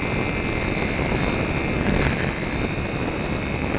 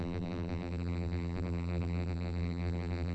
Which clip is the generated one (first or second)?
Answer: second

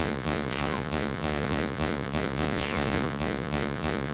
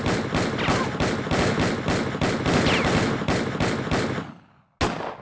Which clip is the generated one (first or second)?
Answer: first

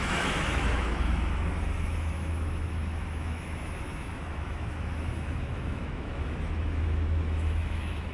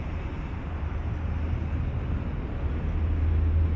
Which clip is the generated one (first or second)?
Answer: first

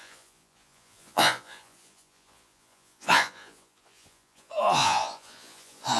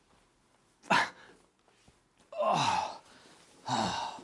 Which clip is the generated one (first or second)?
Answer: first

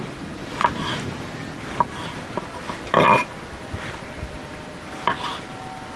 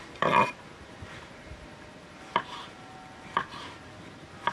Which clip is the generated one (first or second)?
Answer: second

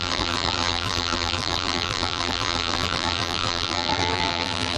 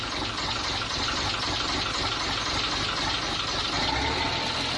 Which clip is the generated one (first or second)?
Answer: first